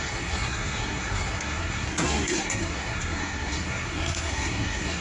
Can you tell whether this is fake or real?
fake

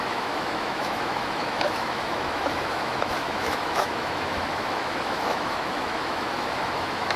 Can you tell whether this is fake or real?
fake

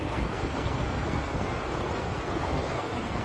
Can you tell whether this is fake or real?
fake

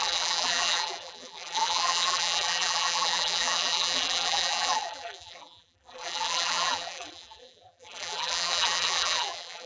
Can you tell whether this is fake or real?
fake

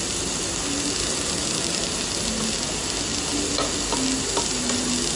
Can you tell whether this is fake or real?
real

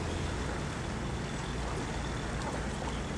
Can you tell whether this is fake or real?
real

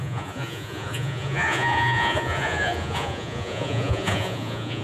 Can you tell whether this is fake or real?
fake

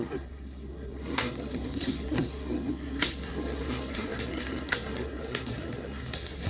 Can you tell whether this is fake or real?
fake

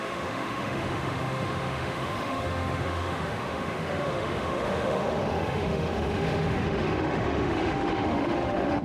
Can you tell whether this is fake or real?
fake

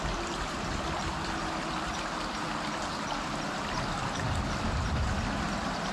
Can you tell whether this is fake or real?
real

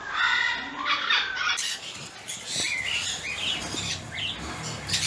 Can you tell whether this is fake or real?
real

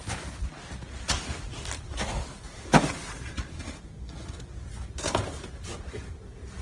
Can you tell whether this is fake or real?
real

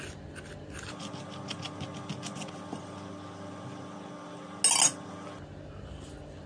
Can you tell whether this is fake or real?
real